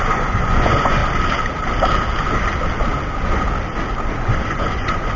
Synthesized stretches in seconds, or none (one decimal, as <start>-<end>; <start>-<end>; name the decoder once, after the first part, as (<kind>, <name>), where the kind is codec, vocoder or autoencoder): 0.0-1.0 (vocoder, Vocos); 4.1-5.2